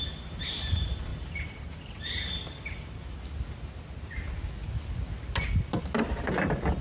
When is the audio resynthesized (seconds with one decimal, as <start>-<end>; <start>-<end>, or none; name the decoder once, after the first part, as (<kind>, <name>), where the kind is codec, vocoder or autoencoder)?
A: 0.0-2.4 (vocoder, BigVGAN v2)